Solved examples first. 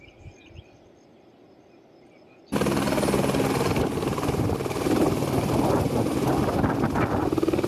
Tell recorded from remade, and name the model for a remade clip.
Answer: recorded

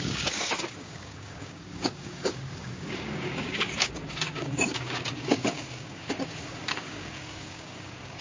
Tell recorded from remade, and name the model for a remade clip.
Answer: remade, codec, DAC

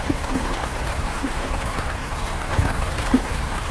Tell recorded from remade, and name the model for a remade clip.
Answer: remade, codec, SNAC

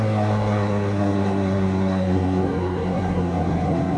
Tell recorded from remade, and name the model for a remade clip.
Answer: remade, codec, SNAC